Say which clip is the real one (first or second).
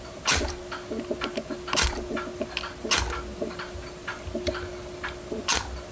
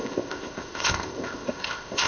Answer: first